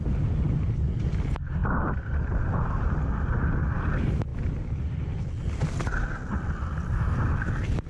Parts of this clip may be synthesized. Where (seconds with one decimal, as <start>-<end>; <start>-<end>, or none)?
none